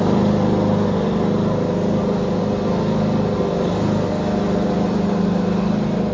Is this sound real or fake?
real